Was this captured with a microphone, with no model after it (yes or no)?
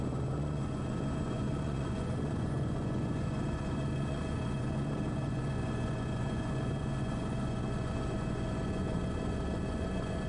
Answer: no